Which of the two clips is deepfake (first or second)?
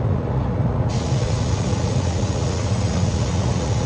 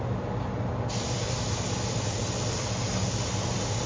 first